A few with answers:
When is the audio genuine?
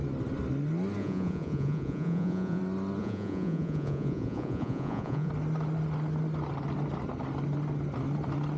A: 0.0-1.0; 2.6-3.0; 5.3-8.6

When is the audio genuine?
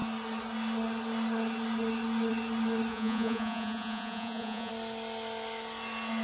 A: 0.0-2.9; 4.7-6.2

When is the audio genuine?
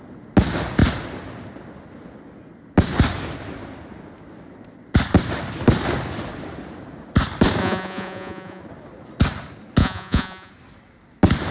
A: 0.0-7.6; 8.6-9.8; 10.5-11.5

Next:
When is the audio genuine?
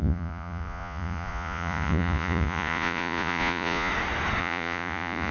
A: 3.9-4.4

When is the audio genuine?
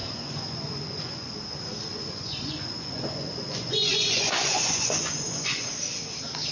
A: 1.3-1.9; 5.7-6.5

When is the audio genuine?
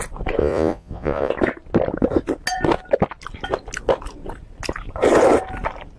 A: 0.0-0.4; 1.3-6.0